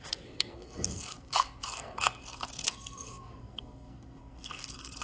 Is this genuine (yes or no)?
no